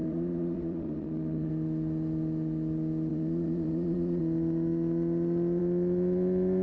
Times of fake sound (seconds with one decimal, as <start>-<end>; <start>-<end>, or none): 0.0-1.5; 3.1-4.2